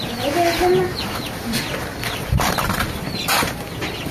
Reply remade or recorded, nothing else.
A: recorded